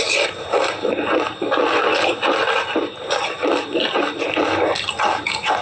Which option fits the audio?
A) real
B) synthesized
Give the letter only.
A